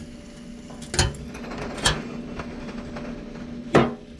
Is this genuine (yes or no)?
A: yes